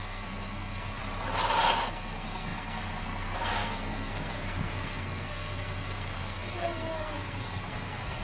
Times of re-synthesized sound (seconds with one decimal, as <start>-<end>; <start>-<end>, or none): 0.0-1.0; 1.8-8.2